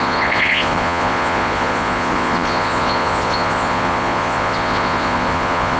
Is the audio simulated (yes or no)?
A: yes